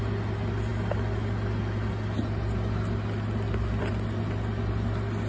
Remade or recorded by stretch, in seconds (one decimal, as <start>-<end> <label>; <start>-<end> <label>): 0.0-5.3 recorded